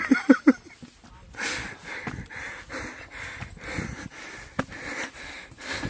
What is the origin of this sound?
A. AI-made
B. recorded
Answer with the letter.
B